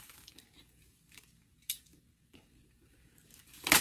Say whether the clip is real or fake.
fake